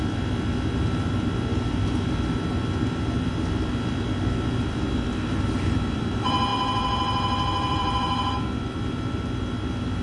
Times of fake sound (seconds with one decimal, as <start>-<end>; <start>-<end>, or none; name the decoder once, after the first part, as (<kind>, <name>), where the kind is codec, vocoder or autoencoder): 6.5-8.7 (vocoder, BigVGAN v2)